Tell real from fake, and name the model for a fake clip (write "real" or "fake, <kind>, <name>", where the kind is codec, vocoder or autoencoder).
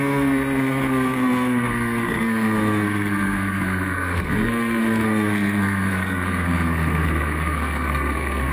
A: fake, codec, SNAC